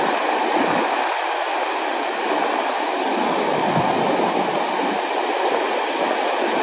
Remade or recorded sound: recorded